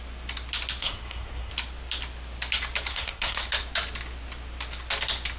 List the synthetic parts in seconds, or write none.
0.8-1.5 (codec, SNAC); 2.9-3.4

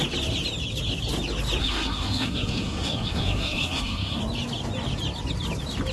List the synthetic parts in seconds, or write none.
1.6-4.2 (codec, SNAC)